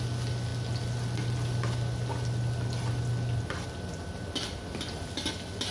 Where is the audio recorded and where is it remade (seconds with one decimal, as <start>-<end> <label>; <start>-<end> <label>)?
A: 0.0-5.7 recorded